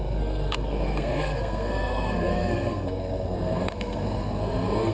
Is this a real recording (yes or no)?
no